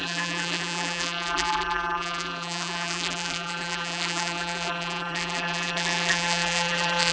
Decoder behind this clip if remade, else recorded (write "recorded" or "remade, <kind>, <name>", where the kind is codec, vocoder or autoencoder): remade, vocoder, BigVGAN v2